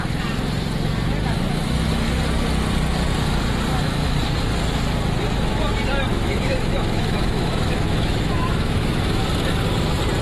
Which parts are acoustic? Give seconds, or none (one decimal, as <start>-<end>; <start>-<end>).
0.0-6.1; 9.2-10.2